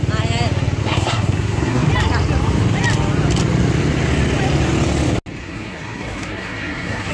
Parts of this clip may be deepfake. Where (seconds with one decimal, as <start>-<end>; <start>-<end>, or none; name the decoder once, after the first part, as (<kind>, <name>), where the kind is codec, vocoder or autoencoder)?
0.8-1.9 (codec, SNAC); 5.4-7.1